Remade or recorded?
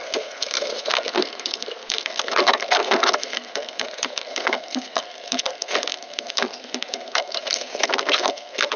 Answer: remade